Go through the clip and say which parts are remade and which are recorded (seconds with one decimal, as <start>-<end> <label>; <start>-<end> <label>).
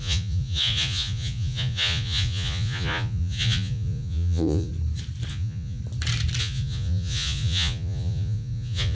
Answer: 0.0-4.7 remade; 4.7-5.3 recorded; 5.3-5.8 remade; 5.8-6.4 recorded; 6.4-8.9 remade